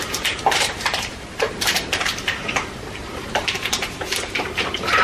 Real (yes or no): no